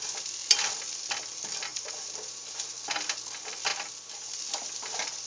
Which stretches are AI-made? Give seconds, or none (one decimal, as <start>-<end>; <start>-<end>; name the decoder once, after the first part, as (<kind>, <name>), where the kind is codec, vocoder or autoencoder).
0.4-1.2 (vocoder, BigVGAN v2); 1.7-2.6